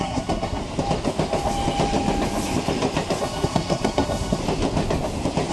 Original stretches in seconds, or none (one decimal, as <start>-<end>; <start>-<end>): 0.6-3.2; 4.4-5.5